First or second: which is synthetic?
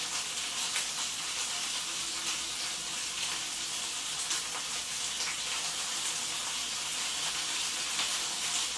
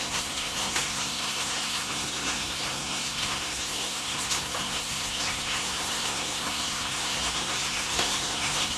second